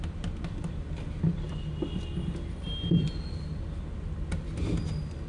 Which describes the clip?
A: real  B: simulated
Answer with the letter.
A